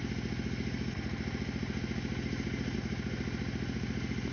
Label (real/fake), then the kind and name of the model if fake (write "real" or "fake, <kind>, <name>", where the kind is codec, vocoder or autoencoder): real